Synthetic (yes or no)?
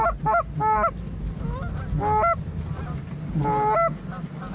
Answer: no